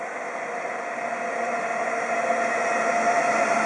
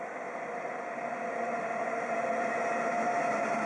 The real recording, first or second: first